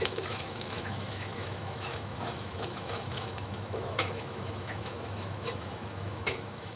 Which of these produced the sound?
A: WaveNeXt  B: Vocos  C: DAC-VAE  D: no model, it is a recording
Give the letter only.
C